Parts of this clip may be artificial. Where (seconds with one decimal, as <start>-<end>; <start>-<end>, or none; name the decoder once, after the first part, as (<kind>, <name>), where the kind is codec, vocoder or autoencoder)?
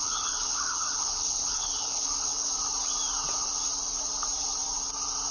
0.0-2.5 (codec, HILCodec)